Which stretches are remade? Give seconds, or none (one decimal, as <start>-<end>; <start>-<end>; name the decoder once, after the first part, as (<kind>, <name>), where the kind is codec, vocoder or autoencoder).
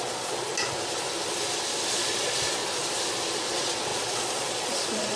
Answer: 0.0-0.5 (vocoder, Vocos); 1.9-2.6; 3.3-5.2